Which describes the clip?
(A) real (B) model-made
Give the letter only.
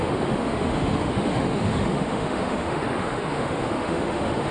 B